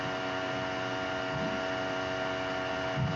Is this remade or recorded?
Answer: recorded